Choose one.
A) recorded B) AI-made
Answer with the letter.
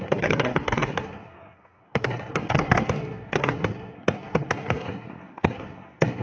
B